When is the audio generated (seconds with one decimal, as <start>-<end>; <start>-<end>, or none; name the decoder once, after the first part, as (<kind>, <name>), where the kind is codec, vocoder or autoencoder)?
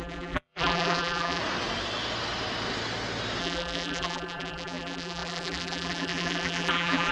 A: 0.0-1.4 (vocoder, BigVGAN v2); 3.4-7.1